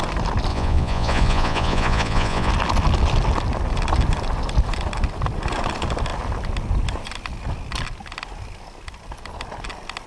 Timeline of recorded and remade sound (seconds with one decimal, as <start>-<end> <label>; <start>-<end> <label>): 0.0-0.5 recorded; 0.5-2.5 remade; 2.5-10.1 recorded